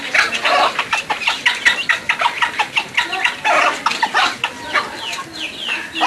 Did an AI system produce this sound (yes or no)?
no